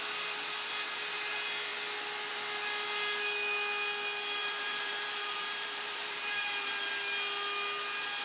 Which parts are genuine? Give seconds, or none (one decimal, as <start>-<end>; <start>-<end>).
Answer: 0.0-4.4; 6.9-8.2